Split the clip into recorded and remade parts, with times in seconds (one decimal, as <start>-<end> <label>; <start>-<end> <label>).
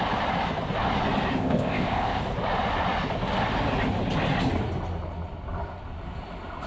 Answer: 0.0-1.4 recorded; 1.4-2.2 remade; 2.2-6.7 recorded